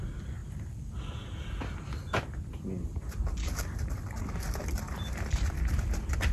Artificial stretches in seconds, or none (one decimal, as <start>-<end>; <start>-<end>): none